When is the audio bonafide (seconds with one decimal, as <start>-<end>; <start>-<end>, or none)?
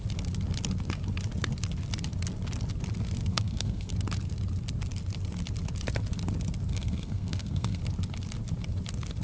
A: 0.0-3.3; 3.9-6.7; 7.8-9.2